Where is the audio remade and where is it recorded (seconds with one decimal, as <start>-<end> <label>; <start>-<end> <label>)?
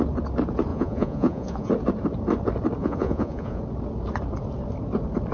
0.0-0.7 recorded; 0.7-1.7 remade; 1.7-2.8 recorded; 2.8-3.6 remade; 3.6-5.3 recorded